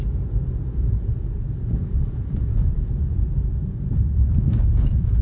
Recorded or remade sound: remade